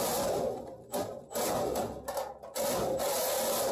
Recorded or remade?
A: recorded